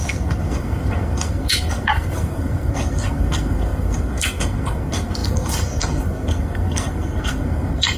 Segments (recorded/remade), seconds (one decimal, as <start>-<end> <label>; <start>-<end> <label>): 0.0-8.0 remade